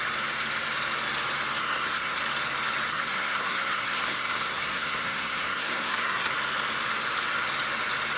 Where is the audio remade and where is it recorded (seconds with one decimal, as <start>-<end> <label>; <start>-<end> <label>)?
0.0-1.6 recorded; 1.6-2.2 remade; 2.2-2.9 recorded; 2.9-6.3 remade; 6.3-8.2 recorded